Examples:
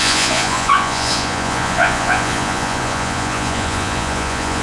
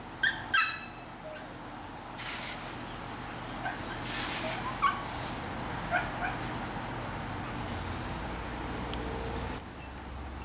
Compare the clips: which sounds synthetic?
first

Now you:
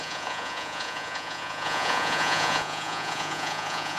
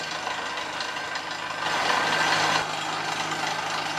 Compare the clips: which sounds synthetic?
first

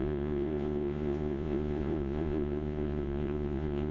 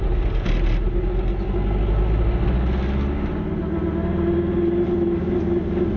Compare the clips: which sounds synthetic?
first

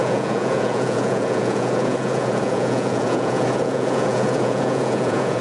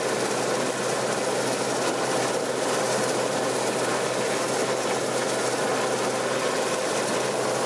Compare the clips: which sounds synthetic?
first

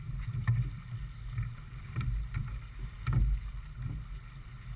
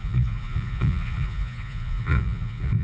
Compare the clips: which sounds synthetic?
second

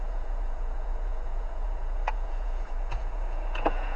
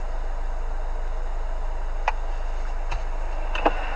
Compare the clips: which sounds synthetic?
first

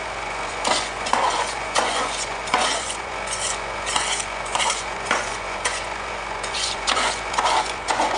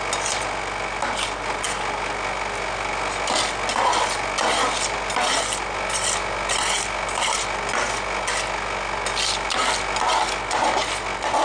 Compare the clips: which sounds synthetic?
first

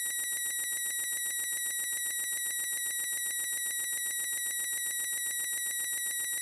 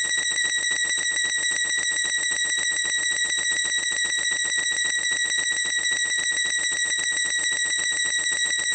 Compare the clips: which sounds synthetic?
second